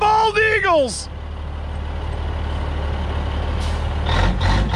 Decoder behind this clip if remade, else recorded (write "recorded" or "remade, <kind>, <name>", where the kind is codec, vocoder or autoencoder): recorded